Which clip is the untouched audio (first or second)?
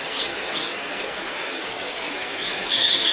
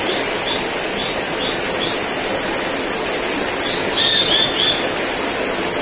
second